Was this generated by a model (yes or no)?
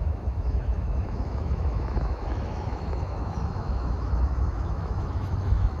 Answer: yes